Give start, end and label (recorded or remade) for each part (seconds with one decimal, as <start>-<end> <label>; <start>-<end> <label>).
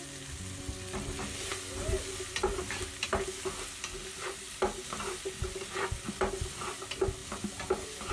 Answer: 0.0-8.1 recorded